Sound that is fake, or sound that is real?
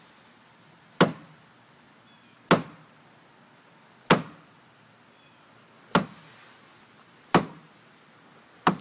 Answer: real